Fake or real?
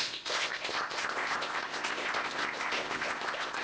fake